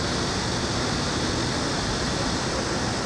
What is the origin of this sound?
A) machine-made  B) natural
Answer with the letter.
B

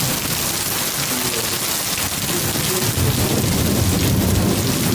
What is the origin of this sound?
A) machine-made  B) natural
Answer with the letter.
B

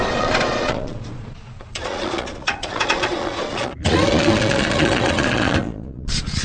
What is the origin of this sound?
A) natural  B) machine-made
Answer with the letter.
B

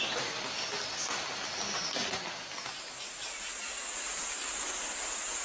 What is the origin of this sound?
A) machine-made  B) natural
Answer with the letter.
B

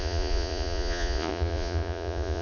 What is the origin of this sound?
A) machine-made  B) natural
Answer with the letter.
A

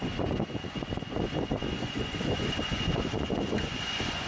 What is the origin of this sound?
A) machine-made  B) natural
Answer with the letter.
A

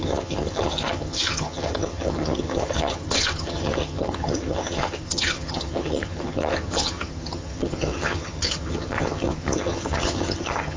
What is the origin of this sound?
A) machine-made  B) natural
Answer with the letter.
A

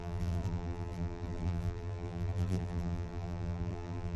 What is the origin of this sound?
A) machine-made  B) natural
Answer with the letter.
A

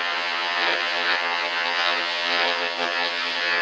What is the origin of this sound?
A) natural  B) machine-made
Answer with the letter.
B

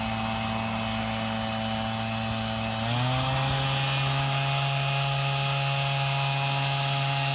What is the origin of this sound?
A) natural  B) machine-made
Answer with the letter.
A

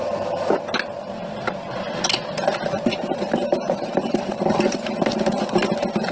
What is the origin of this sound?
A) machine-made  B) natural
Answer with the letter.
B